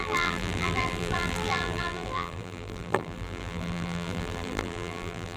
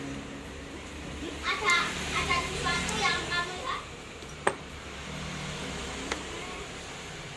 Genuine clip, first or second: second